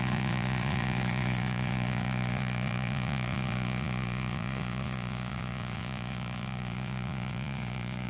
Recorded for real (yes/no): no